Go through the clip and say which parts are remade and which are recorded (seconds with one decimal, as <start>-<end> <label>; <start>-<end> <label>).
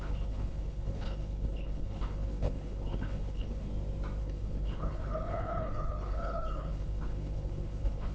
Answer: 0.0-3.7 remade; 3.7-4.2 recorded; 4.2-8.1 remade